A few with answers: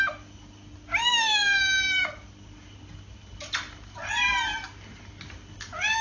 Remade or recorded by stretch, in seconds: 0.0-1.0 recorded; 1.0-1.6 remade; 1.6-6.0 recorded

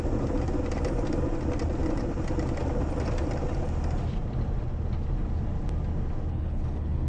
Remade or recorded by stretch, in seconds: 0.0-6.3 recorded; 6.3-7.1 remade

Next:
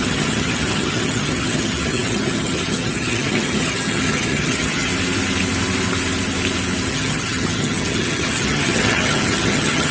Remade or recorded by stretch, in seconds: 0.0-4.9 remade; 4.9-6.9 recorded; 6.9-9.9 remade

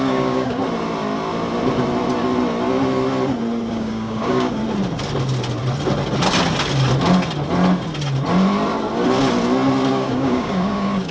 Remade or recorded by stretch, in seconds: 0.0-0.6 remade; 0.6-3.7 recorded; 3.7-4.6 remade; 4.6-9.9 recorded; 9.9-11.1 remade

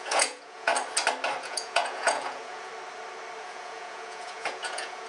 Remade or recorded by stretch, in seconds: 0.0-0.7 remade; 0.7-1.4 recorded; 1.4-2.7 remade; 2.7-3.4 recorded; 3.4-5.1 remade